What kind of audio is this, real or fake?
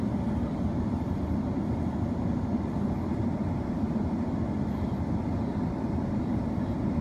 real